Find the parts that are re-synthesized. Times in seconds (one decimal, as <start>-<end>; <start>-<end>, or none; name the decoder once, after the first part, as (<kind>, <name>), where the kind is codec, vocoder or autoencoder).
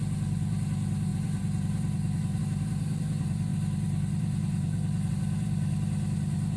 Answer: 0.0-6.6 (vocoder, BigVGAN v2)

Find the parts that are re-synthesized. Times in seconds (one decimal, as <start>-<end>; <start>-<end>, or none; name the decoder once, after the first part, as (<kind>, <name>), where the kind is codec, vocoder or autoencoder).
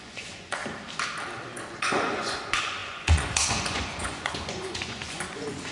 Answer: 0.0-0.6 (vocoder, Vocos); 1.5-5.7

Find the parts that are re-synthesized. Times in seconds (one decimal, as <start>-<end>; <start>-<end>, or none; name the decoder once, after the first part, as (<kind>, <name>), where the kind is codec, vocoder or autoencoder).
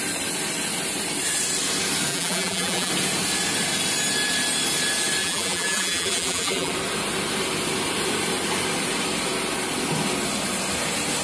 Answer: 2.1-2.9 (vocoder, BigVGAN v2); 5.2-6.7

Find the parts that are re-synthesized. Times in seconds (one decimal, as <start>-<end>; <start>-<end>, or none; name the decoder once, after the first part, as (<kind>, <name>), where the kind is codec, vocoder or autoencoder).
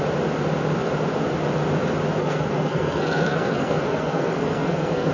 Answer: 2.2-5.1 (codec, SNAC)